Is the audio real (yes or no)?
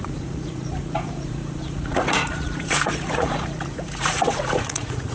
no